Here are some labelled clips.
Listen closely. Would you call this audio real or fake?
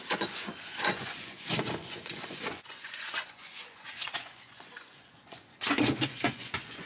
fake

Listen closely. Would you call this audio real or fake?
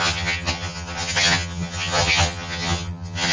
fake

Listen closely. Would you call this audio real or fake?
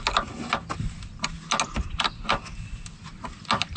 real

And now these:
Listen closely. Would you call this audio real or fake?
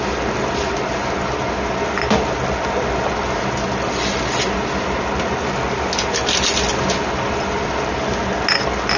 real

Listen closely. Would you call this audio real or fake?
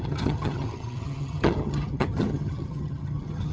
fake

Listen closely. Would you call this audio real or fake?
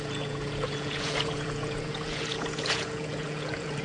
fake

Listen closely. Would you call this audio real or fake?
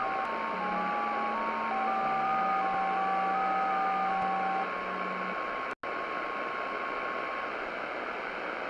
real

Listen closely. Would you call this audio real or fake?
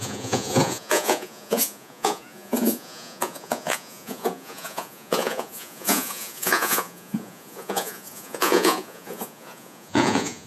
fake